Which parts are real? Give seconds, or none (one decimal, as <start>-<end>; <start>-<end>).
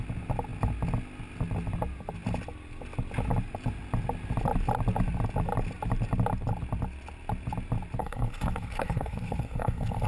0.0-8.0